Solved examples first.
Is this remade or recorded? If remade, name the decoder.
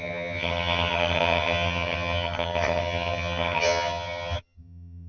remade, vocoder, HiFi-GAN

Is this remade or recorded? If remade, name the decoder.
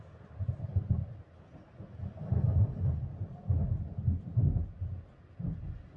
recorded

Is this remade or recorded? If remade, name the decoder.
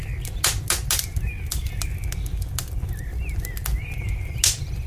recorded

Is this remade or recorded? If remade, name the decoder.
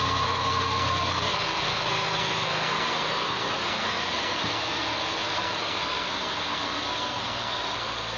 remade, codec, SNAC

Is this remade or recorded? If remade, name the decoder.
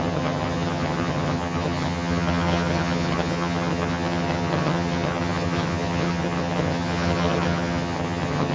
remade, vocoder, HiFi-GAN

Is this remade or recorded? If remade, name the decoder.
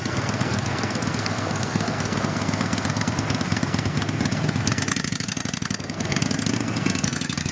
remade, codec, SNAC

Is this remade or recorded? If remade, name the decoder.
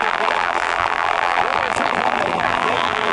remade, vocoder, BigVGAN v2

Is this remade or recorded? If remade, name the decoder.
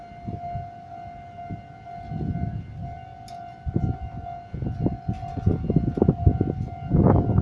recorded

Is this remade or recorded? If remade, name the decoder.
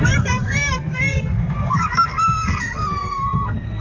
remade, codec, SNAC